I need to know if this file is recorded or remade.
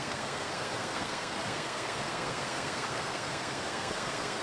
remade